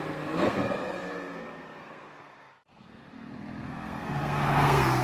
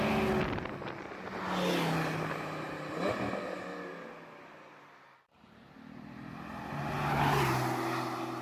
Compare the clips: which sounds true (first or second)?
second